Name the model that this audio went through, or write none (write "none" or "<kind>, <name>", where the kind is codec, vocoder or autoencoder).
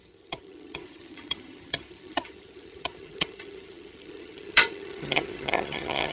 vocoder, HiFi-GAN